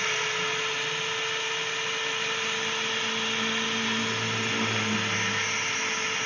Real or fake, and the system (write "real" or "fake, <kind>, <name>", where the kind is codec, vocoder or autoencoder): real